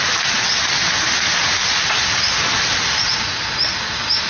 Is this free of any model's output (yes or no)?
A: yes